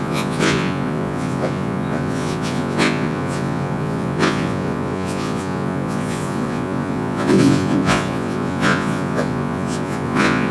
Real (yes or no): no